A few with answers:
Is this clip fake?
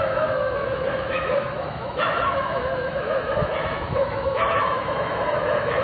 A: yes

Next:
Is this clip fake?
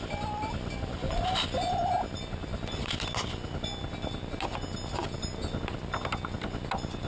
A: no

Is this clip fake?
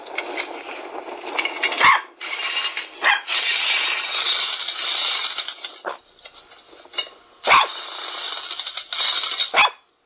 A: no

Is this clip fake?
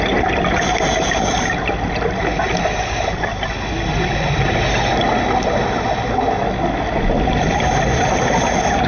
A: no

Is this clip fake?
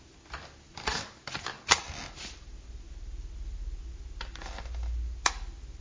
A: no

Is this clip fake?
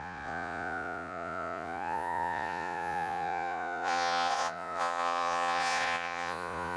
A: yes